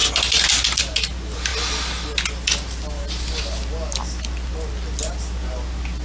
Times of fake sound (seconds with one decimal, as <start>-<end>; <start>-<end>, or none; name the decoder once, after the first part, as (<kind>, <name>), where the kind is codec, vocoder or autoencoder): none